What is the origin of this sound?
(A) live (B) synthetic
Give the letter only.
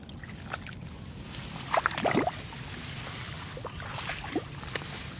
A